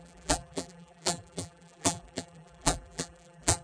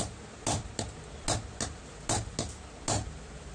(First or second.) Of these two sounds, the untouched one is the second